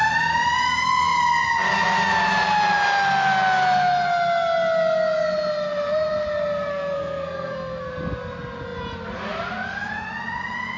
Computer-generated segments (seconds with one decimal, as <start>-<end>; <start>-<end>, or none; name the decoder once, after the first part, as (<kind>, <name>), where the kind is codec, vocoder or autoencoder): 6.7-7.9 (codec, SNAC)